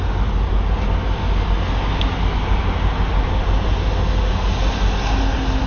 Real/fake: real